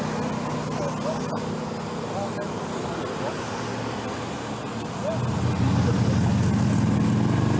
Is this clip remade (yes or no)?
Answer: no